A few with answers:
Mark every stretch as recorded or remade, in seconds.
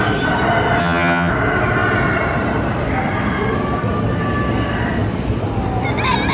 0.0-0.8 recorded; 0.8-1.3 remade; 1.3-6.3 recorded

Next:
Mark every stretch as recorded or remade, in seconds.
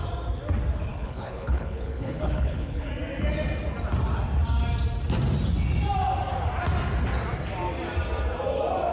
0.0-0.9 recorded; 0.9-2.9 remade; 2.9-8.9 recorded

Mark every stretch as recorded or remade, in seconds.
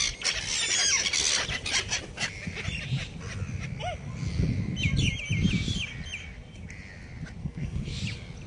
0.0-7.4 recorded; 7.4-8.0 remade; 8.0-8.5 recorded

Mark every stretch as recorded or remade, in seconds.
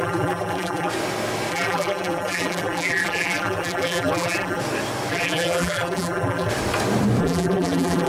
0.0-0.9 remade; 0.9-1.5 recorded; 1.5-4.6 remade; 4.6-5.1 recorded; 5.1-6.5 remade; 6.5-7.2 recorded; 7.2-8.1 remade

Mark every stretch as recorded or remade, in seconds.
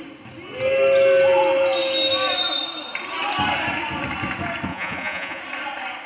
0.0-4.7 recorded; 4.7-5.4 remade; 5.4-6.1 recorded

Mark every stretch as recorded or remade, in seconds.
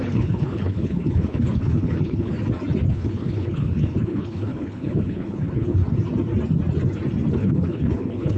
0.0-2.3 remade; 2.3-2.9 recorded; 2.9-5.8 remade; 5.8-7.3 recorded; 7.3-8.4 remade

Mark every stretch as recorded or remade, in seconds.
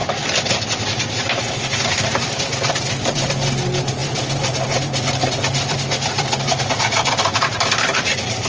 0.0-8.5 remade